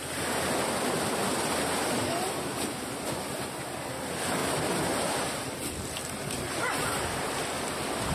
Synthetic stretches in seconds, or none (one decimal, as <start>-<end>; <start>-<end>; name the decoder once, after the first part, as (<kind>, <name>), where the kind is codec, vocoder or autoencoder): 1.2-2.4 (vocoder, BigVGAN v2); 4.4-8.1